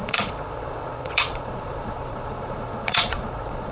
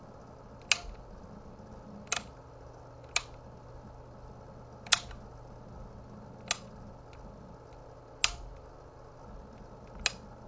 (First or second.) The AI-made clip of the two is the first